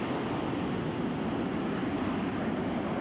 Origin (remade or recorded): recorded